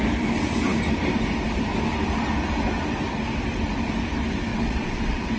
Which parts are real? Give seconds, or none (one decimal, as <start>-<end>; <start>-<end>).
0.0-4.5